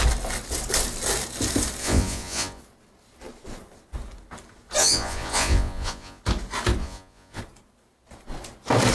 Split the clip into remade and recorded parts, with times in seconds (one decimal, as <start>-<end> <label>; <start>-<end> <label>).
0.0-1.8 recorded; 1.8-2.6 remade; 2.6-4.8 recorded; 4.8-6.2 remade; 6.2-6.8 recorded; 6.8-7.4 remade; 7.4-8.9 recorded